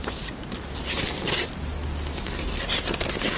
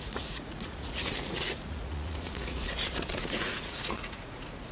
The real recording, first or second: first